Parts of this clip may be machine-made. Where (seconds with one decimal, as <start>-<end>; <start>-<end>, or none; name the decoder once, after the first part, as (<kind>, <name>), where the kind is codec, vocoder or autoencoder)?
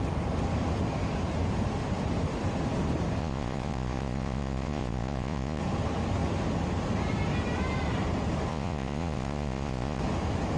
3.2-5.6 (vocoder, Vocos); 8.5-10.0